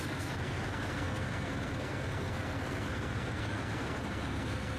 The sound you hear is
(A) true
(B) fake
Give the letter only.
B